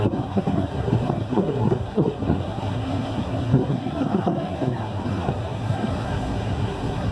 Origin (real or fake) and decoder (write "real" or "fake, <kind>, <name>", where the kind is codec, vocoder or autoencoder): fake, codec, SNAC